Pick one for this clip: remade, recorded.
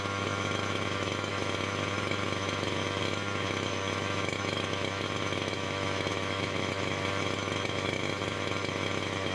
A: remade